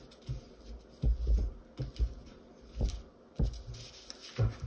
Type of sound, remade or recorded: recorded